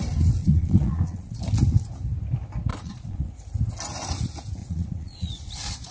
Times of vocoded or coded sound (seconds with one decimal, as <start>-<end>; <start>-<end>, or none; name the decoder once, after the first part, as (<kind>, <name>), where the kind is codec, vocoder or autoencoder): 0.4-1.4 (vocoder, Vocos); 2.7-3.3; 4.6-5.9

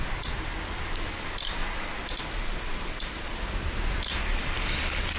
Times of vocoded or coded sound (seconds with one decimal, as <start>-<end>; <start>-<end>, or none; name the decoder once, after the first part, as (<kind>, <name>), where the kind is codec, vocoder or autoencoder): 0.0-1.6 (vocoder, BigVGAN v2); 4.2-5.2

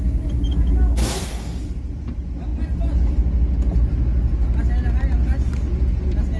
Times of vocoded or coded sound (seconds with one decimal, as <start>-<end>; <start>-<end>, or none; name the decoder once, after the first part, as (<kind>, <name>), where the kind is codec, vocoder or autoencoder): 1.0-1.6 (codec, DAC)